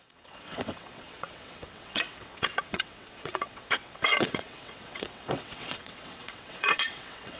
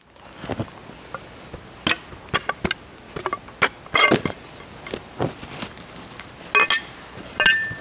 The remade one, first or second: first